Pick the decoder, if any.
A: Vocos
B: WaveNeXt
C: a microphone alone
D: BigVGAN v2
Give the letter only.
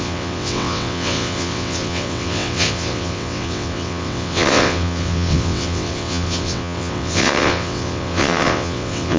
B